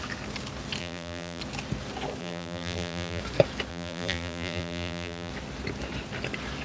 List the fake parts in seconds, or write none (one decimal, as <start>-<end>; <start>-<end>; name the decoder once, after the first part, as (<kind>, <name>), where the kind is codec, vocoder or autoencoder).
0.8-1.4 (vocoder, BigVGAN v2); 2.2-3.2; 3.7-5.3